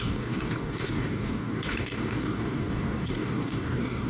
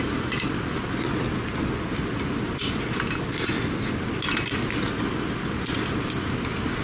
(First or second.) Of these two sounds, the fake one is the first